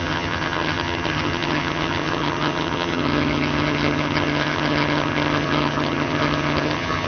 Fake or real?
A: fake